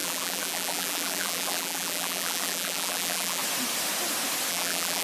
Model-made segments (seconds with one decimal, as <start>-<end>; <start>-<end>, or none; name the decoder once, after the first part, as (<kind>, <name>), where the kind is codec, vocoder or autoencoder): 0.0-3.4 (vocoder, BigVGAN v2); 4.5-5.0